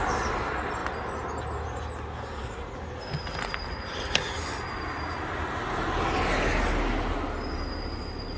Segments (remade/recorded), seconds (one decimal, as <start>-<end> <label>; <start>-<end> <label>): 0.0-8.4 recorded